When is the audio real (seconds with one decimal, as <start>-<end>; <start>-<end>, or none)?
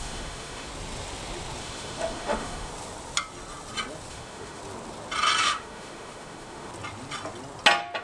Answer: 0.7-1.6; 2.7-4.1; 4.6-5.4; 6.7-8.0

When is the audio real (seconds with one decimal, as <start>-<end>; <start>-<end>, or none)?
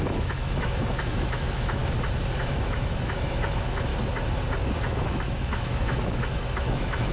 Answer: 1.8-2.4; 3.9-4.8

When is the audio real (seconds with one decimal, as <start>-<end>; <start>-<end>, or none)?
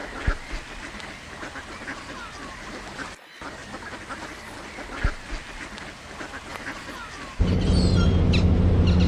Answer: 0.0-9.1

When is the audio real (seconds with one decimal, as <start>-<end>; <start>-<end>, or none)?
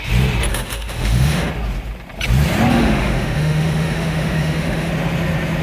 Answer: 0.0-0.5; 1.5-2.7; 4.9-5.6